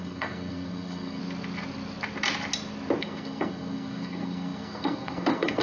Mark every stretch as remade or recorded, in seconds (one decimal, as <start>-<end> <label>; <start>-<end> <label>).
0.0-1.2 remade; 1.2-3.0 recorded; 3.0-5.6 remade

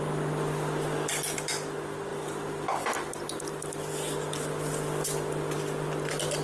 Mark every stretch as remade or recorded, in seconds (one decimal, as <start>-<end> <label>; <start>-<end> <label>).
0.0-6.4 recorded

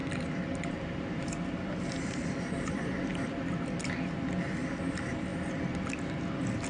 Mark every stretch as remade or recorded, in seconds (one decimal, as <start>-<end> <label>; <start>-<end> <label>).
0.0-3.7 remade; 3.7-6.7 recorded

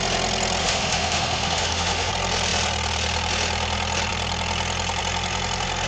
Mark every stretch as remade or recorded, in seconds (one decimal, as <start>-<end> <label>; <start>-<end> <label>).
0.0-0.6 recorded; 0.6-2.1 remade; 2.1-5.9 recorded

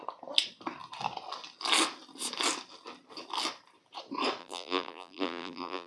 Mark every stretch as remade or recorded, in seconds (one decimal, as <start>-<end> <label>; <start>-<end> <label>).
0.0-4.4 recorded; 4.4-5.9 remade

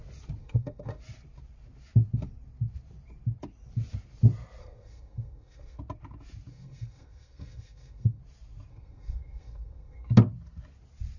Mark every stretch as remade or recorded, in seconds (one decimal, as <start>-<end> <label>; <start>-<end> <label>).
0.0-0.4 recorded; 0.4-1.0 remade; 1.0-4.6 recorded; 4.6-5.8 remade; 5.8-6.5 recorded; 6.5-8.2 remade; 8.2-8.7 recorded; 8.7-10.1 remade; 10.1-11.2 recorded

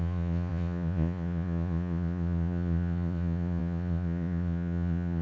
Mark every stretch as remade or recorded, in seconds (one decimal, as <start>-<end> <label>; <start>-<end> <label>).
0.0-5.2 remade